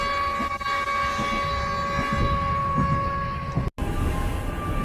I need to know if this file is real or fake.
real